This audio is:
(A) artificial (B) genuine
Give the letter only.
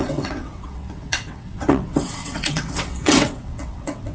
A